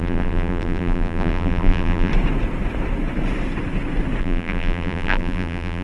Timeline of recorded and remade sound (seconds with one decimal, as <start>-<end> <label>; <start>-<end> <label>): 0.0-2.1 remade; 2.1-4.2 recorded; 4.2-5.8 remade